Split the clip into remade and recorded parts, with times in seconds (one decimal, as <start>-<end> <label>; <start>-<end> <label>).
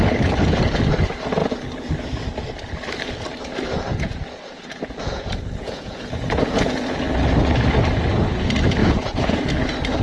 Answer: 0.0-3.9 recorded; 3.9-7.1 remade; 7.1-8.8 recorded; 8.8-9.5 remade; 9.5-10.0 recorded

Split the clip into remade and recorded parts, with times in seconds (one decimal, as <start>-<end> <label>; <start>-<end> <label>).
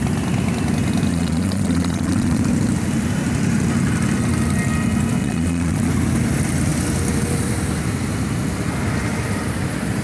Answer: 0.0-1.1 recorded; 1.1-2.4 remade; 2.4-5.2 recorded; 5.2-5.9 remade; 5.9-10.0 recorded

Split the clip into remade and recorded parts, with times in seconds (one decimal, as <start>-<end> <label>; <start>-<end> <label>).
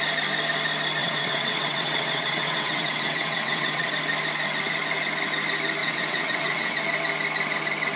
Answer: 0.0-1.0 recorded; 1.0-3.9 remade; 3.9-5.8 recorded; 5.8-6.8 remade; 6.8-8.0 recorded